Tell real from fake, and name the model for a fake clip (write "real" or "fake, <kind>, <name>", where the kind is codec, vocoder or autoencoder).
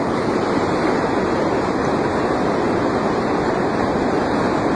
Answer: real